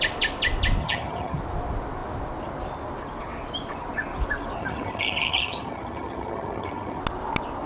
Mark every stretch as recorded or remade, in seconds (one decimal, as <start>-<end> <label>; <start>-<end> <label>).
0.0-0.8 recorded; 0.8-1.4 remade; 1.4-4.6 recorded; 4.6-7.0 remade; 7.0-7.7 recorded

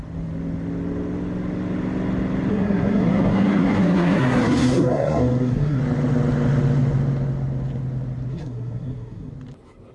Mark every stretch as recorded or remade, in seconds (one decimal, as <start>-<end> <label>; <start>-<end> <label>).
0.0-2.5 recorded; 2.5-5.8 remade; 5.8-8.3 recorded; 8.3-9.3 remade; 9.3-9.9 recorded

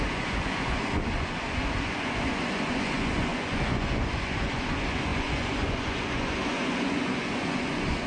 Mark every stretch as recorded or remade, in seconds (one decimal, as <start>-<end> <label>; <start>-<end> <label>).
0.0-8.1 remade

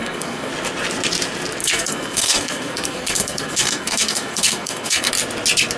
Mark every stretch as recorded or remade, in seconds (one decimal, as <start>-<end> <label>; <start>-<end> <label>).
0.0-0.5 remade; 0.5-1.6 recorded; 1.6-5.1 remade; 5.1-5.8 recorded

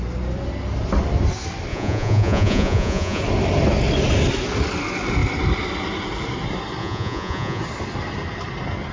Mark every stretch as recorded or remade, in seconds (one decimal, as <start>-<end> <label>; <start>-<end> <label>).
0.0-1.7 recorded; 1.7-3.2 remade; 3.2-6.8 recorded; 6.8-7.6 remade; 7.6-8.9 recorded

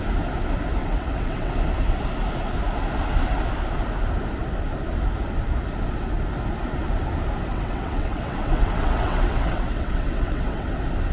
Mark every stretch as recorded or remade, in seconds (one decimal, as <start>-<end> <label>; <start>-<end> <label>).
0.0-0.8 recorded; 0.8-1.5 remade; 1.5-7.5 recorded; 7.5-10.7 remade; 10.7-11.1 recorded

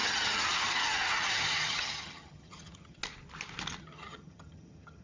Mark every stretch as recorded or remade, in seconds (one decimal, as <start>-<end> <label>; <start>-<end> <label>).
0.0-3.0 remade; 3.0-3.8 recorded; 3.8-5.0 remade